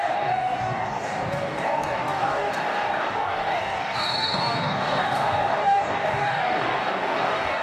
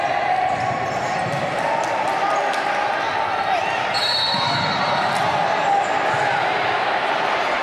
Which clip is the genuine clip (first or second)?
second